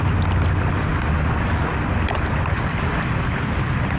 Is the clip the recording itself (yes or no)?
yes